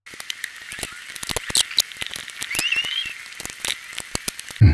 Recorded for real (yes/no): yes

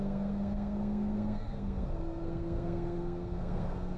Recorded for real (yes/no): no